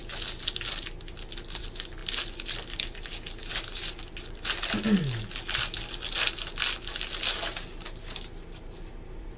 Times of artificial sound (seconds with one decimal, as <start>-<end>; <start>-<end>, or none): none